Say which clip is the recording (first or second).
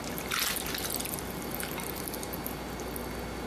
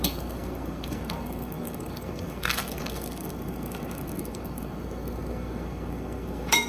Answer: first